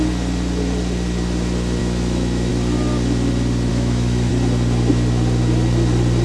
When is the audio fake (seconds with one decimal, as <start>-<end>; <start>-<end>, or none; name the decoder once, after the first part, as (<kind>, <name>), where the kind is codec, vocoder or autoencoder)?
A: 1.8-2.5 (autoencoder, DAC-VAE); 3.7-4.3

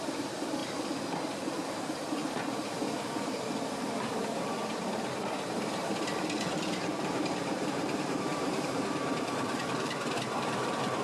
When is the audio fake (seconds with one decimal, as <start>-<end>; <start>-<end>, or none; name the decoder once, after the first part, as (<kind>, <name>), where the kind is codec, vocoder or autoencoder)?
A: 0.0-2.2 (vocoder, BigVGAN v2); 3.8-11.0

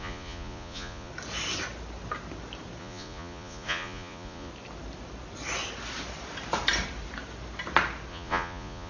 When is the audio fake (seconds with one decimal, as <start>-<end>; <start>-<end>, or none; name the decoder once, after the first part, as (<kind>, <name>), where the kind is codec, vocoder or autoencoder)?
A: 0.0-1.1 (vocoder, Vocos); 2.8-4.5; 8.1-8.9

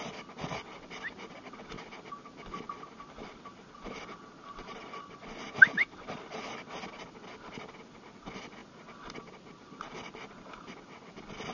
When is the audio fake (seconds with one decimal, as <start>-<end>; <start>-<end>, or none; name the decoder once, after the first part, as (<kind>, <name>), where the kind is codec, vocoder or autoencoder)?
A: none

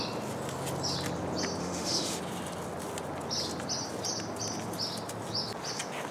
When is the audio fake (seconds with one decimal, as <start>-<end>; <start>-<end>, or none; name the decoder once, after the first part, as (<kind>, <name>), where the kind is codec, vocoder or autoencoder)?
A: 1.6-2.2 (autoencoder, DAC-VAE)

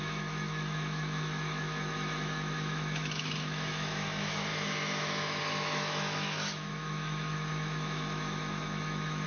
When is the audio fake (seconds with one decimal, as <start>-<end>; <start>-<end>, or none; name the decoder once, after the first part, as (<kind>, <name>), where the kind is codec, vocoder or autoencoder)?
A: 0.0-9.3 (autoencoder, DAC-VAE)

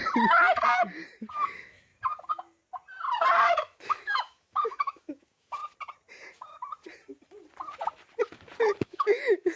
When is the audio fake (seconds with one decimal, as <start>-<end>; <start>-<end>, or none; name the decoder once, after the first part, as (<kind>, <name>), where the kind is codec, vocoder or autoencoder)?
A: 1.3-1.9 (autoencoder, DAC-VAE); 3.5-5.6; 8.8-9.6